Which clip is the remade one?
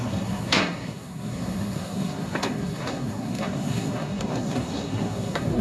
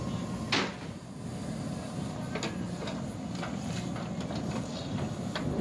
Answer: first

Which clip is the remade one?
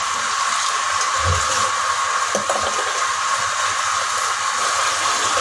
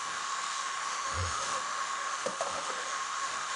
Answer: second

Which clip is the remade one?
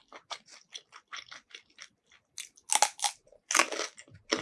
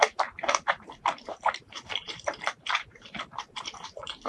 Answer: second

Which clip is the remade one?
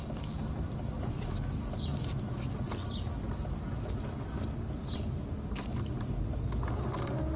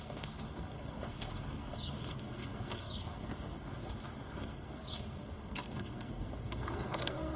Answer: second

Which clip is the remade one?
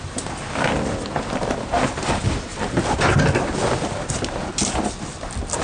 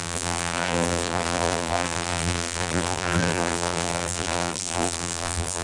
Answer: second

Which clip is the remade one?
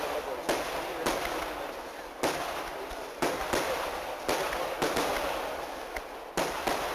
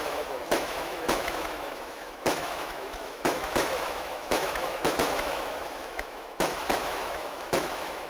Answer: second